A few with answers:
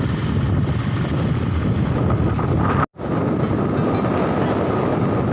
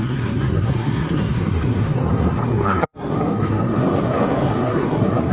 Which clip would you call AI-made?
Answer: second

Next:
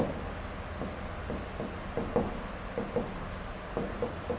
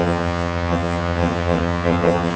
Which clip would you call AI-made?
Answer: second